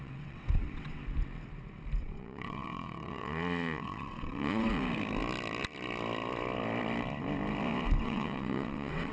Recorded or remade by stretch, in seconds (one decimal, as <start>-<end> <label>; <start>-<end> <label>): 0.0-1.0 remade; 1.0-2.0 recorded; 2.0-4.7 remade; 4.7-8.0 recorded; 8.0-9.1 remade